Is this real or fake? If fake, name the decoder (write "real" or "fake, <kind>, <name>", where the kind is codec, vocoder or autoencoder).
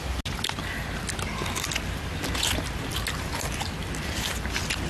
real